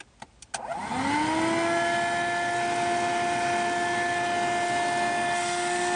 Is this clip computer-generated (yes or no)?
no